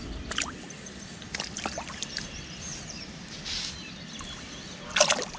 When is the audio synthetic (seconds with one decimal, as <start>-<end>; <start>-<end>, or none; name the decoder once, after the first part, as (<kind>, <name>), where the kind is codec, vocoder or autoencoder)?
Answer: 2.7-3.4 (vocoder, BigVGAN v2)